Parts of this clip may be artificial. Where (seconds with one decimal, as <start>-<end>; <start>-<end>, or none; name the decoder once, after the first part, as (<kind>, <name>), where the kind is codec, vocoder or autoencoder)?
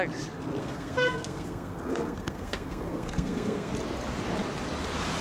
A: 0.6-3.7 (codec, SNAC)